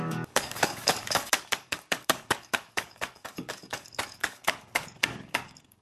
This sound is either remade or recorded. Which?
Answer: remade